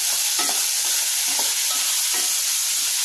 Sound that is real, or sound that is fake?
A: real